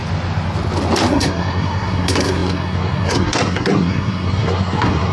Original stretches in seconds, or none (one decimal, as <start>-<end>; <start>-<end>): 0.0-1.1